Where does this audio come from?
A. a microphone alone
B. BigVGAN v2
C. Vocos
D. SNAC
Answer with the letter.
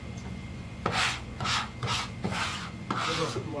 C